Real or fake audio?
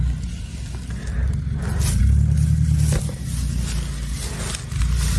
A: real